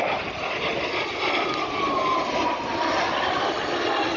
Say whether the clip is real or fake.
real